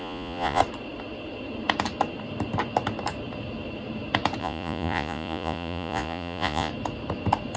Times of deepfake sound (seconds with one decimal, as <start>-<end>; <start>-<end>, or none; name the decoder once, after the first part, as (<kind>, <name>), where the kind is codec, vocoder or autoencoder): 0.0-0.6 (vocoder, Vocos); 4.4-6.7